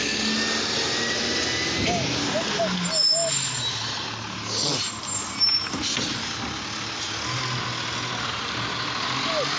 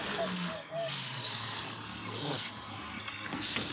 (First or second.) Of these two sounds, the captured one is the first